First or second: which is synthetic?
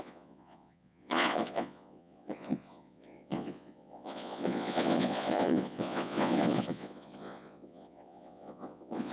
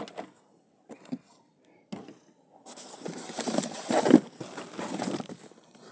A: first